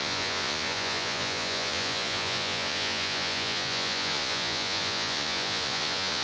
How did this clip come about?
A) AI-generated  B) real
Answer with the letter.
A